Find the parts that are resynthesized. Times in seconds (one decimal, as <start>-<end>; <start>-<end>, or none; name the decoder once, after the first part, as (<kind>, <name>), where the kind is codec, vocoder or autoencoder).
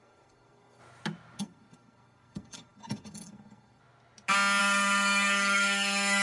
0.0-0.8 (codec, SNAC); 1.4-3.8; 4.6-6.2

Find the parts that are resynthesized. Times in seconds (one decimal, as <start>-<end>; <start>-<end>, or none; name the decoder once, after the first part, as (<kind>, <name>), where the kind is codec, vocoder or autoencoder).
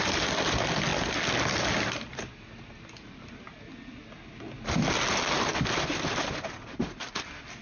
none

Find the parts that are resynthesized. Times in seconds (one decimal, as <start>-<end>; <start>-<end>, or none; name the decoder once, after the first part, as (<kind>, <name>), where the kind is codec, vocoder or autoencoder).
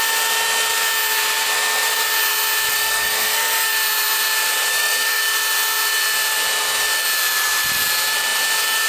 2.7-3.7 (codec, SNAC); 4.7-5.2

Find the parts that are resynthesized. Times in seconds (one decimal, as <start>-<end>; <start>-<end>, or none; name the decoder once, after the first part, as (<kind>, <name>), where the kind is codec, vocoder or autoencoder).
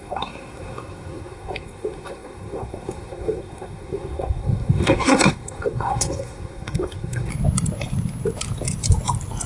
0.0-7.3 (codec, SNAC)